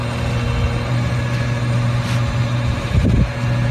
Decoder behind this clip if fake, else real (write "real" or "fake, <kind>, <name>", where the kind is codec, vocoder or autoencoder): real